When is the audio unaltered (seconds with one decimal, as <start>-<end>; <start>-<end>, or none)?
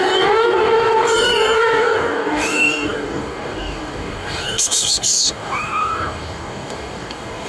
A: none